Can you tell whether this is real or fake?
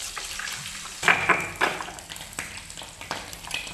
real